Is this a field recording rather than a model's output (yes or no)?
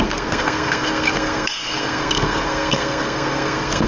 no